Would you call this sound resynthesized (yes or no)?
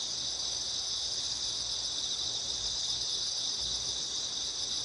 no